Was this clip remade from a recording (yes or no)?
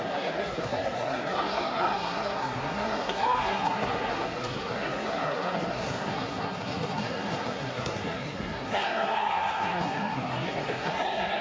yes